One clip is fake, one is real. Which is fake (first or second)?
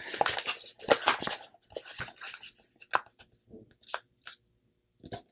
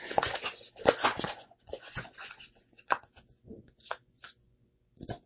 second